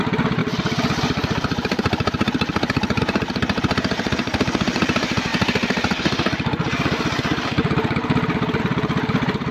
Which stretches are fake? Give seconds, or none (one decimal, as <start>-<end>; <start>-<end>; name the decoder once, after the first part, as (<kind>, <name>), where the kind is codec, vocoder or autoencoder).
0.0-0.4 (vocoder, BigVGAN v2); 3.0-5.3; 8.6-9.5